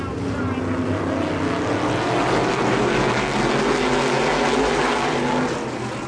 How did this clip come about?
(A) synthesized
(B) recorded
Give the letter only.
B